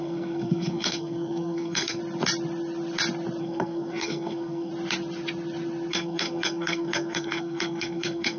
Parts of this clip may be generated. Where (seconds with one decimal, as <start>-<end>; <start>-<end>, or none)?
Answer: 0.0-2.0; 3.4-4.7; 5.9-8.4